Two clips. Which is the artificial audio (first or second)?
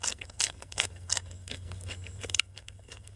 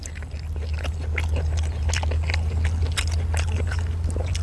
first